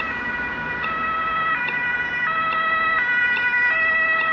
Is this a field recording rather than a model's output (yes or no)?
yes